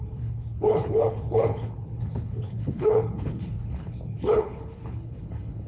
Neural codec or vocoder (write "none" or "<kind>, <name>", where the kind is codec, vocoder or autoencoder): codec, HILCodec